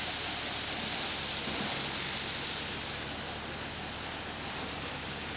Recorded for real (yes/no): yes